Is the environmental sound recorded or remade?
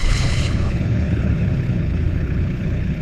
remade